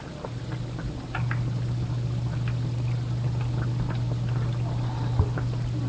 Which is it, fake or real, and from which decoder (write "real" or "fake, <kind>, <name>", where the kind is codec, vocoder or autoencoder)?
real